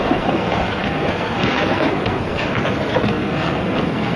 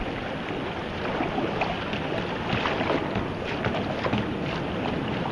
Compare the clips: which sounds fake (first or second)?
first